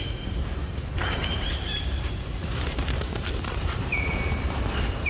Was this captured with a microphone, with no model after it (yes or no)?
no